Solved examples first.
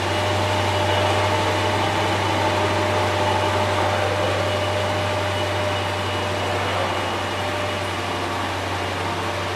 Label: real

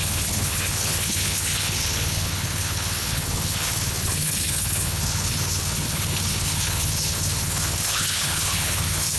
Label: fake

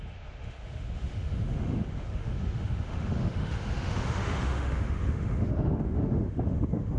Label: fake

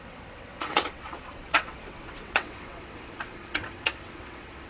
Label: fake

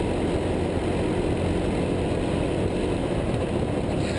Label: real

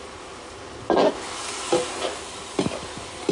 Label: real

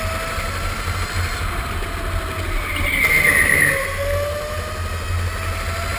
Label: real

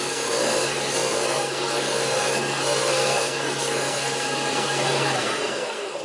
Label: fake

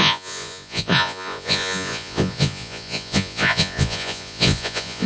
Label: fake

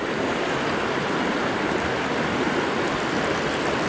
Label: real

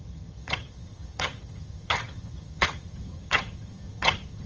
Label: fake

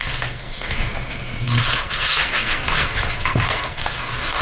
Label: fake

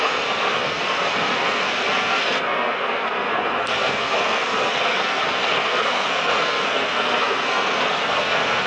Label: fake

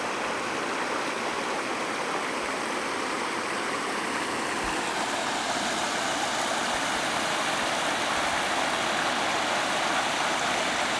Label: real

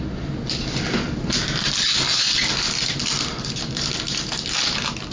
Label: real